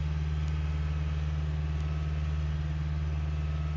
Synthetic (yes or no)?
no